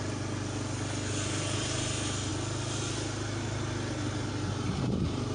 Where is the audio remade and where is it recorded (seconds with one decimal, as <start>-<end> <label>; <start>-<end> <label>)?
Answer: 0.0-5.3 recorded

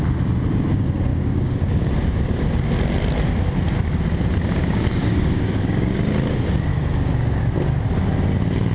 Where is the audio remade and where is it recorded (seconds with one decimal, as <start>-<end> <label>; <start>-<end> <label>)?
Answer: 0.0-1.1 recorded; 1.1-1.9 remade; 1.9-4.6 recorded; 4.6-6.1 remade; 6.1-6.7 recorded; 6.7-7.4 remade; 7.4-8.7 recorded

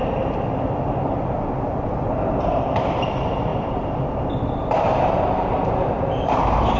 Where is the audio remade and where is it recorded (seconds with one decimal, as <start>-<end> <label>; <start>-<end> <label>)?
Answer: 0.0-6.8 recorded

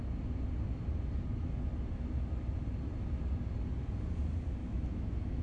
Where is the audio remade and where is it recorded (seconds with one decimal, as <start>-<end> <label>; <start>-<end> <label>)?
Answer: 0.0-4.6 recorded; 4.6-5.4 remade

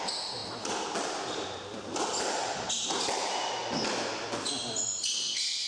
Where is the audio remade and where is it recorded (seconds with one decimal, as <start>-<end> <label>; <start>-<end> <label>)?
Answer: 0.0-5.7 recorded

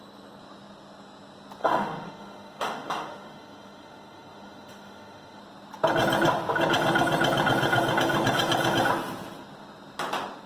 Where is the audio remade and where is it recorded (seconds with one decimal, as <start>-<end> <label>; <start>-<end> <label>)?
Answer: 0.0-1.6 recorded; 1.6-5.4 remade; 5.4-10.5 recorded

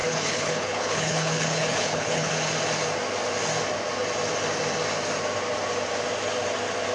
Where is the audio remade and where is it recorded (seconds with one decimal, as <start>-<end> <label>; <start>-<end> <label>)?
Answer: 0.0-2.3 remade; 2.3-6.9 recorded